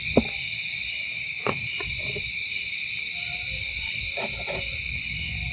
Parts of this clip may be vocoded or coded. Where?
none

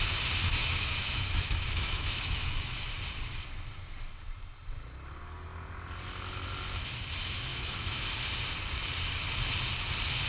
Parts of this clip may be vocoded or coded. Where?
0.6-2.9 (autoencoder, DAC-VAE); 7.5-8.1

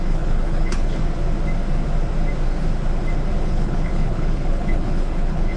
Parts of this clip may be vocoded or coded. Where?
0.0-1.0 (codec, HILCodec); 3.4-5.6

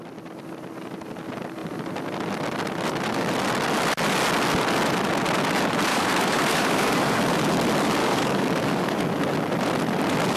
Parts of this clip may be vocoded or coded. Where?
5.9-7.2 (codec, DAC); 8.0-9.0

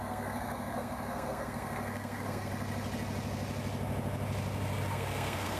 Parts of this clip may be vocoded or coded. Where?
0.0-2.5 (codec, SNAC); 4.9-5.6